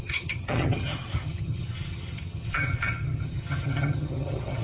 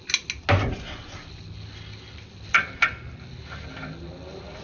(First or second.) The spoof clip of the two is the first